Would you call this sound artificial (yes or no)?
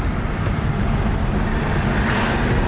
no